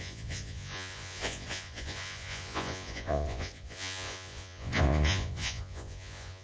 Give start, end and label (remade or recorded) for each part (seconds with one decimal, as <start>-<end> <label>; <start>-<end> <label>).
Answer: 0.0-6.4 remade